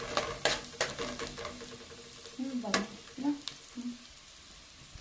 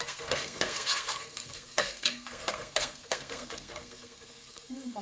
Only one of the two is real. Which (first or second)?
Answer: first